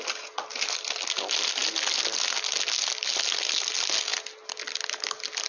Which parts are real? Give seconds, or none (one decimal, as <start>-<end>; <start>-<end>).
0.0-5.5

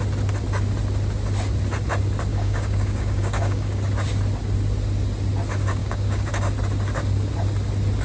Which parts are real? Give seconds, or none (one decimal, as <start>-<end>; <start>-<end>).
0.0-2.3; 3.8-5.8; 6.3-8.0

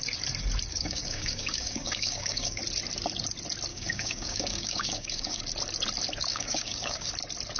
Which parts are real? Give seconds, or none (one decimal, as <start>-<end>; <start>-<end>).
0.0-0.7; 2.6-3.7; 5.4-6.3; 7.1-7.6

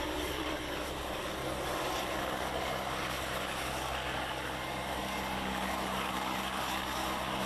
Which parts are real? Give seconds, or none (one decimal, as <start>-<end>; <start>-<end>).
1.4-2.1